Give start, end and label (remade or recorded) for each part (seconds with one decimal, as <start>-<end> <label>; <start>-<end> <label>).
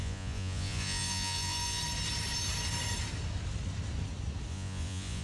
0.0-1.8 remade; 1.8-4.5 recorded; 4.5-5.2 remade